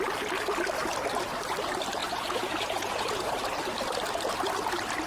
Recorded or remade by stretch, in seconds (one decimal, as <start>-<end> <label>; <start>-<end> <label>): 0.0-2.0 recorded; 2.0-3.3 remade; 3.3-5.1 recorded